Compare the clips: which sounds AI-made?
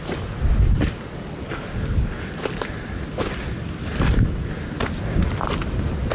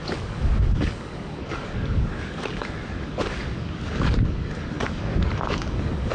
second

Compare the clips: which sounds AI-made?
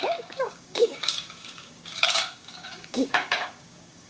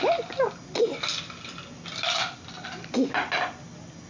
first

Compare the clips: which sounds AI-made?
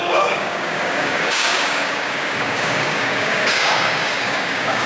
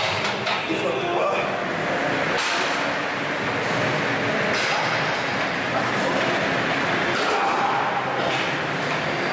first